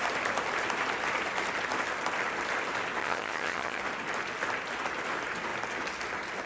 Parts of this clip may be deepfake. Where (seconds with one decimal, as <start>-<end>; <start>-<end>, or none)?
3.0-3.8